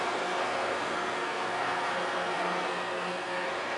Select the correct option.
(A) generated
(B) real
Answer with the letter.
A